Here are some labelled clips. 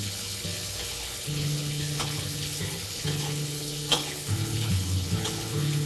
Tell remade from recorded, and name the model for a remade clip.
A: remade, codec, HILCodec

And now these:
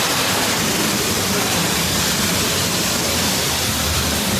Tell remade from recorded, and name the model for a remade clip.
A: recorded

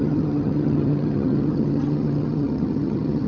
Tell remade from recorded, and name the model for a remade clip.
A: remade, vocoder, HiFi-GAN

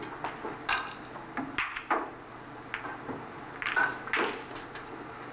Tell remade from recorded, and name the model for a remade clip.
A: recorded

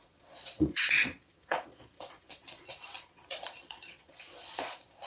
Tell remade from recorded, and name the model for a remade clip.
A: remade, vocoder, Vocos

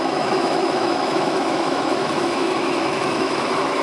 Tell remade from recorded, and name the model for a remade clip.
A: remade, autoencoder, DAC-VAE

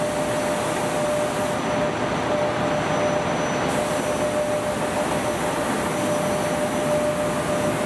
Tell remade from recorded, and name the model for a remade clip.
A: recorded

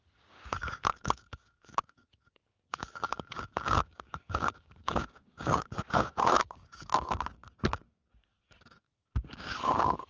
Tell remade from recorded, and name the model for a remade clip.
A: remade, codec, DAC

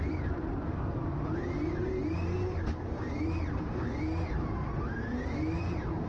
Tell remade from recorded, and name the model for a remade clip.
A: remade, vocoder, BigVGAN v2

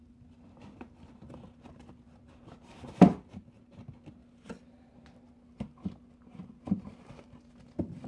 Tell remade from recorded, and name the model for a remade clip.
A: recorded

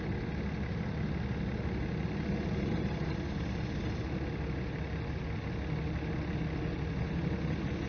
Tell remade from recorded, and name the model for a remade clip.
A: recorded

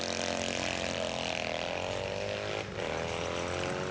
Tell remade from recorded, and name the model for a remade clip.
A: recorded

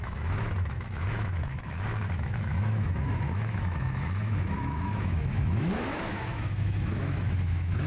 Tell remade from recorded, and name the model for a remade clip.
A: remade, autoencoder, DAC-VAE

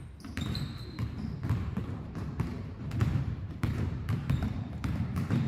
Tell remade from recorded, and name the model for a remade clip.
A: remade, vocoder, BigVGAN v2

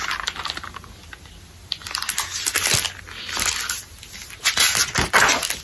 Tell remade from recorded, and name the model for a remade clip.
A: recorded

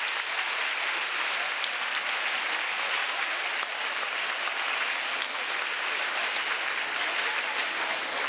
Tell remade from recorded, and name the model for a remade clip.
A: recorded